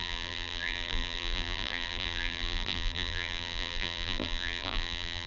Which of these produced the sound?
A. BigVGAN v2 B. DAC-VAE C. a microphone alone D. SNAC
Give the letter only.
A